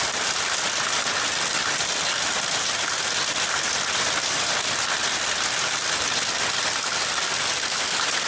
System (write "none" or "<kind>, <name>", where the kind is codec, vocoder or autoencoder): none